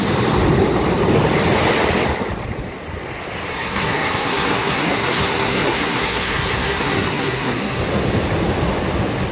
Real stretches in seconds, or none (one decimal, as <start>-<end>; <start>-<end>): 0.0-3.5; 7.8-9.3